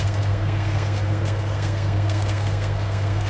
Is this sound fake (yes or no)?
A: yes